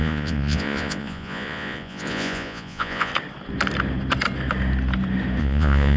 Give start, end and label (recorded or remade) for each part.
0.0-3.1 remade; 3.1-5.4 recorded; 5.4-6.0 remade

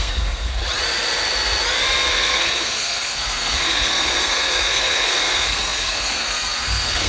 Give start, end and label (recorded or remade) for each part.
0.0-0.6 remade; 0.6-2.1 recorded; 2.1-7.1 remade

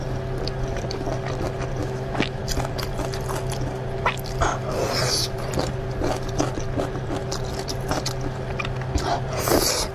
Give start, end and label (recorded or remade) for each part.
0.0-1.8 recorded; 1.8-2.4 remade; 2.4-9.9 recorded

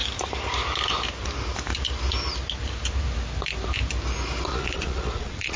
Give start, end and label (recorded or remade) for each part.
0.0-4.5 recorded; 4.5-5.6 remade

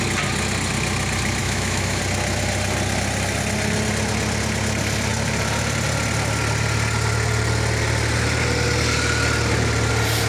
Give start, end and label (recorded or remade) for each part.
0.0-1.4 recorded; 1.4-2.0 remade; 2.0-10.3 recorded

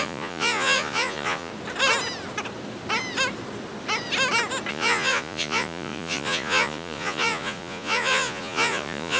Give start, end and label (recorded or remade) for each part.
0.0-1.5 remade; 1.5-4.7 recorded; 4.7-9.2 remade

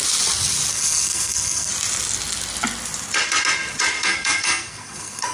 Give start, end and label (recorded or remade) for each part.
0.0-0.7 recorded; 0.7-1.7 remade; 1.7-4.0 recorded; 4.0-5.3 remade

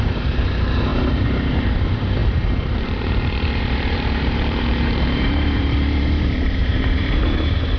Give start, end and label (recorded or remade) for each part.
0.0-7.8 remade